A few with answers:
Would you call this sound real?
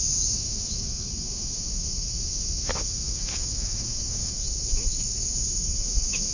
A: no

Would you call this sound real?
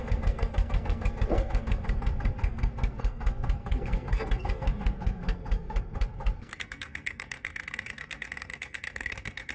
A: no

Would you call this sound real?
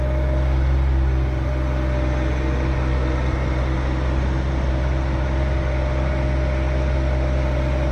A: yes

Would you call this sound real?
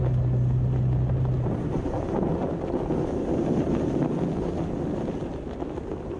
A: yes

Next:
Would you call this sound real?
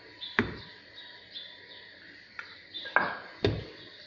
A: yes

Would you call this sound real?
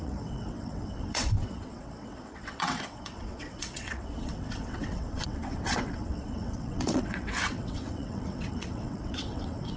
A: no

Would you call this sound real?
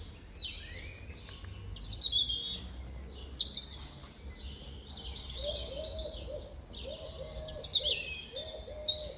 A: yes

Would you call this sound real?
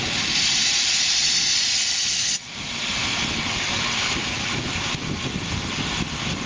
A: yes